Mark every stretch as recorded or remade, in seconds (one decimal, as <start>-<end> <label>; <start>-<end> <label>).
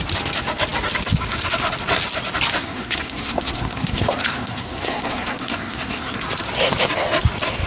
0.0-2.6 recorded; 2.6-6.2 remade; 6.2-7.7 recorded